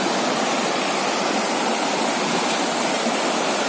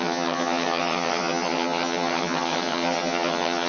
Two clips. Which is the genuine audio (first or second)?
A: first